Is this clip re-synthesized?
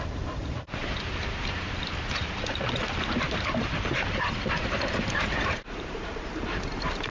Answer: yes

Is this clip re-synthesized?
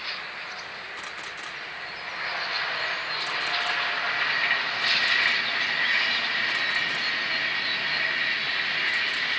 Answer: no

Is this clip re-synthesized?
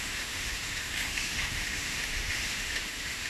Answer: yes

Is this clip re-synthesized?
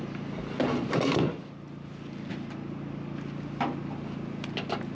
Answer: no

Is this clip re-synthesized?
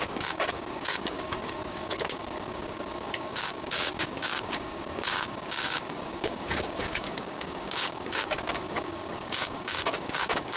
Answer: yes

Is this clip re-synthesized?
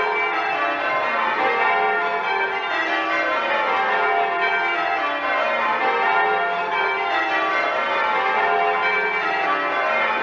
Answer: no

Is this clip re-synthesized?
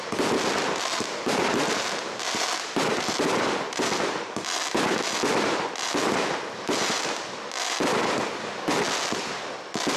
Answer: no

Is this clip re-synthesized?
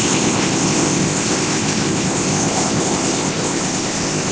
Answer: yes